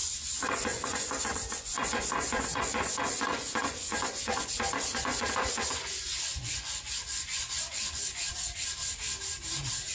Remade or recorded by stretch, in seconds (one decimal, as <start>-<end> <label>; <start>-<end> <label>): 0.0-4.5 remade; 4.5-4.9 recorded; 4.9-8.3 remade; 8.3-9.9 recorded